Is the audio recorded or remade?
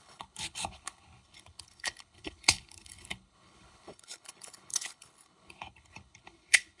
remade